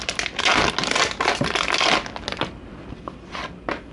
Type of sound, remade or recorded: recorded